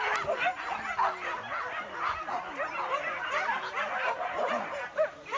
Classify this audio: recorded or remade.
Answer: recorded